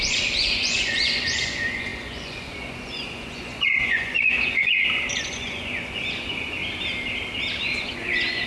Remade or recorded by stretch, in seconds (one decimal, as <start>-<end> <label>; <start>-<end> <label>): 0.0-6.6 remade; 6.6-7.6 recorded; 7.6-8.5 remade

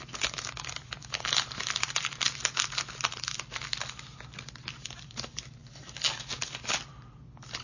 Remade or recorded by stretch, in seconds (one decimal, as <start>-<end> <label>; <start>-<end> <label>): 0.0-7.6 recorded

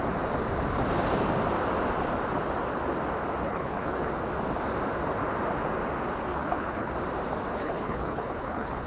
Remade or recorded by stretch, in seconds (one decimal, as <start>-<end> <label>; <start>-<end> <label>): 0.0-3.4 recorded; 3.4-4.1 remade; 4.1-6.3 recorded; 6.3-6.9 remade; 6.9-7.5 recorded; 7.5-8.9 remade

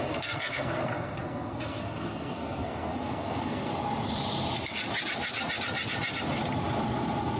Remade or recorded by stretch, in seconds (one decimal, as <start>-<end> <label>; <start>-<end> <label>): 0.0-3.7 remade; 3.7-7.4 recorded

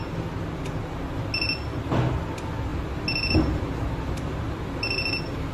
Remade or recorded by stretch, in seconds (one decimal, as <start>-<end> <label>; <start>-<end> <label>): 0.0-5.5 recorded

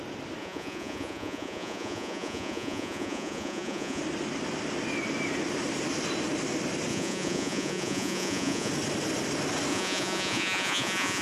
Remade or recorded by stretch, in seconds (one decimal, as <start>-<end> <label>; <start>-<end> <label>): 0.0-0.4 recorded; 0.4-4.0 remade; 4.0-6.9 recorded; 6.9-8.7 remade; 8.7-9.7 recorded; 9.7-11.2 remade

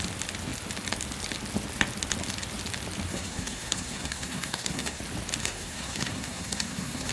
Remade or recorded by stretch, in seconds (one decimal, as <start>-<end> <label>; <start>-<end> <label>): 0.0-3.1 recorded; 3.1-5.0 remade; 5.0-5.4 recorded; 5.4-7.1 remade

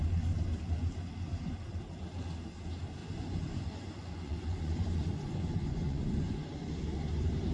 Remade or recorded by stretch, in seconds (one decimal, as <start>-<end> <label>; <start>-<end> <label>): 0.0-3.0 recorded; 3.0-6.7 remade; 6.7-7.5 recorded